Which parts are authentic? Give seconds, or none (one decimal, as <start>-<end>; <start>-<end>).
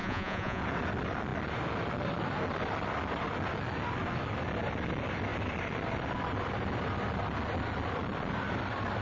0.6-9.0